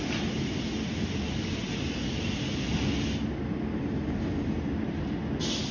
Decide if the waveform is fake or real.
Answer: real